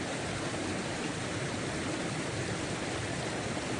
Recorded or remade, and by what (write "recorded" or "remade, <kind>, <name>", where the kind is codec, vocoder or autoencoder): recorded